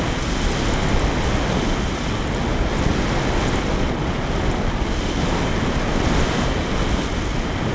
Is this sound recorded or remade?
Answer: recorded